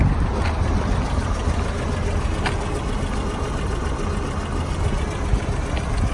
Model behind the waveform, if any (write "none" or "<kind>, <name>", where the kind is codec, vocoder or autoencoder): none